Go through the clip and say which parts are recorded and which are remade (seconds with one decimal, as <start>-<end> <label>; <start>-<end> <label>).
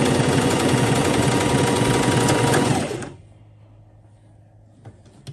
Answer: 0.0-3.2 remade; 3.2-5.3 recorded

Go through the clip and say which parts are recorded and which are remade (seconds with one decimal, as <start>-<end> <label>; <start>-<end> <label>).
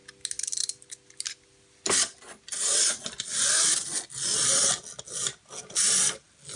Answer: 0.0-6.6 recorded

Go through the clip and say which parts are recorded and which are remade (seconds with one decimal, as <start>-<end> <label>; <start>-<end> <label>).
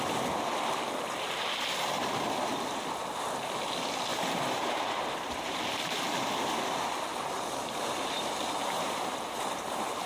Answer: 0.0-4.1 recorded; 4.1-6.0 remade; 6.0-7.1 recorded; 7.1-10.1 remade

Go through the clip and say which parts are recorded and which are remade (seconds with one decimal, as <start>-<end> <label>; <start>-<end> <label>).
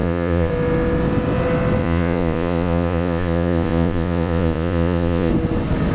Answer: 0.0-0.5 remade; 0.5-1.8 recorded; 1.8-5.3 remade; 5.3-5.9 recorded